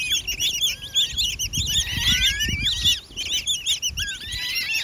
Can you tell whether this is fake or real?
real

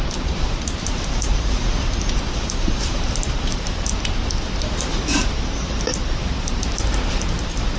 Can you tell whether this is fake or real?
fake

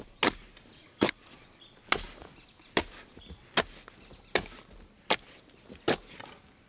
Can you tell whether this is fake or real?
real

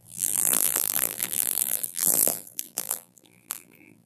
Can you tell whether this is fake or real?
fake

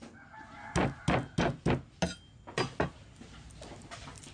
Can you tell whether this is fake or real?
real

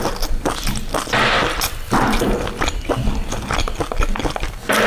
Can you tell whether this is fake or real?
real